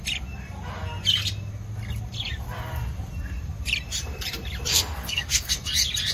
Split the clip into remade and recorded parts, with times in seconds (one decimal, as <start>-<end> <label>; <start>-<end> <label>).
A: 0.0-4.7 recorded; 4.7-5.5 remade; 5.5-6.1 recorded